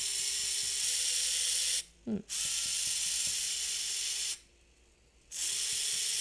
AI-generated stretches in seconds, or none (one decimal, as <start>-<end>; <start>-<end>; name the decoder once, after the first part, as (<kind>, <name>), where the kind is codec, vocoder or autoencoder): none